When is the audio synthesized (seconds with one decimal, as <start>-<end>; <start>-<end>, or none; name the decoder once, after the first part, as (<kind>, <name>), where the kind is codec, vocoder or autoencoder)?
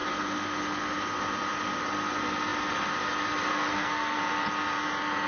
3.5-4.2 (codec, SNAC)